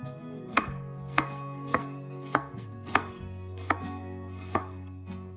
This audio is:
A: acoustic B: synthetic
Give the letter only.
B